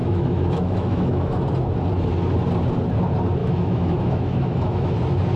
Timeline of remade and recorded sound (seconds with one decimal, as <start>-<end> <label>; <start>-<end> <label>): 0.0-1.4 remade; 1.4-3.4 recorded; 3.4-4.9 remade; 4.9-5.4 recorded